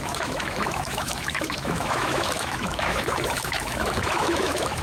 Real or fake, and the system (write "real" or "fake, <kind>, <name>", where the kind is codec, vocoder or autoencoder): fake, autoencoder, DAC-VAE